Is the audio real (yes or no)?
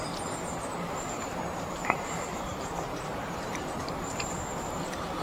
no